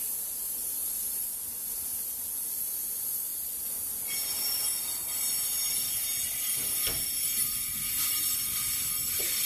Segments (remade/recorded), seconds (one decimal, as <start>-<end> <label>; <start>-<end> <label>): 0.0-0.8 recorded; 0.8-1.3 remade; 1.3-3.3 recorded; 3.3-3.9 remade; 3.9-9.5 recorded